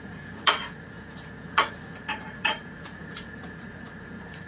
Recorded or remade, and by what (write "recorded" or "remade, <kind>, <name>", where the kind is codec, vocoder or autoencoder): remade, vocoder, Vocos